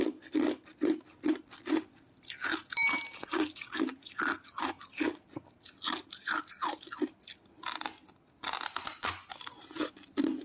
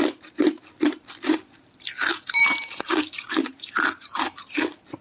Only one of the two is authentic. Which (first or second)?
first